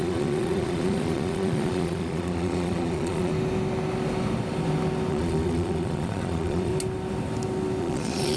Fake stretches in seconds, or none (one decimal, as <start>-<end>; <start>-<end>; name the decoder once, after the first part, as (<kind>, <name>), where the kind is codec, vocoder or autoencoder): 0.0-3.3 (vocoder, Vocos); 5.1-6.7; 7.8-8.4